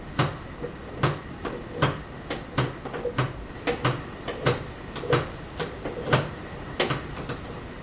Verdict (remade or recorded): recorded